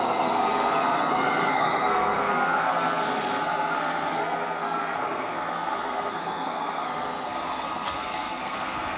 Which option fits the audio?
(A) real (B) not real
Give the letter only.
B